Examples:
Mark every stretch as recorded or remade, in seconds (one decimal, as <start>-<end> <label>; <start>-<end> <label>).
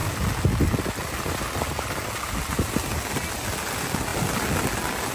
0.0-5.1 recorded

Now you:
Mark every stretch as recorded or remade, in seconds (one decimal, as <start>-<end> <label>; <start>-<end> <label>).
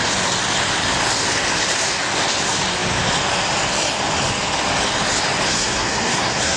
0.0-5.5 recorded; 5.5-6.6 remade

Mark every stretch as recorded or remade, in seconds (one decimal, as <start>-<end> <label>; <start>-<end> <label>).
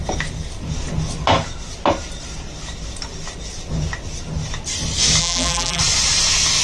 0.0-5.2 recorded; 5.2-5.8 remade; 5.8-6.6 recorded